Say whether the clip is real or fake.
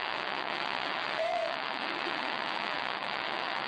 fake